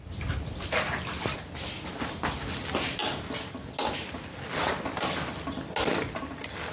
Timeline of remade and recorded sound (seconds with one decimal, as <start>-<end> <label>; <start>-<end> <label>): 0.0-6.7 recorded